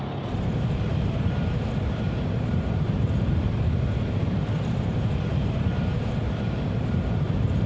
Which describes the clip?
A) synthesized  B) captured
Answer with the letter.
A